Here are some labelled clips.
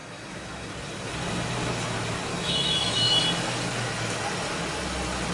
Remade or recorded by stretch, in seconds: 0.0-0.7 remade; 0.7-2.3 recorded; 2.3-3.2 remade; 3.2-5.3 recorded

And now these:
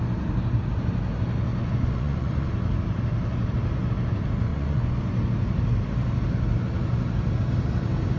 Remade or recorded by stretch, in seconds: 0.0-1.5 recorded; 1.5-2.5 remade; 2.5-4.5 recorded; 4.5-5.0 remade; 5.0-8.2 recorded

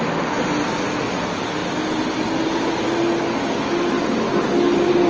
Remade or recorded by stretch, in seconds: 0.0-5.1 recorded

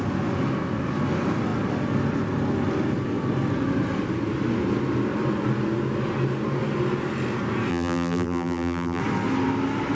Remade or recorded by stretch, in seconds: 0.0-7.7 recorded; 7.7-9.0 remade; 9.0-9.9 recorded

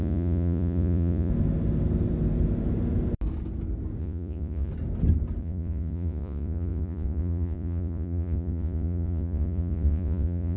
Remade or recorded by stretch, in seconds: 0.0-1.3 remade; 1.3-4.0 recorded; 4.0-4.7 remade; 4.7-5.4 recorded; 5.4-10.6 remade